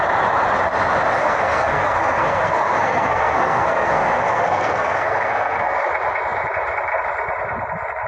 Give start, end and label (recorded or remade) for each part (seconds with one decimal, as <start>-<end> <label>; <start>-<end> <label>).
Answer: 0.0-1.2 recorded; 1.2-5.8 remade; 5.8-8.1 recorded